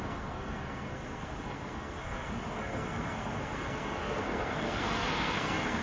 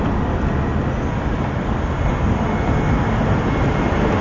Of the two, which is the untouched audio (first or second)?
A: second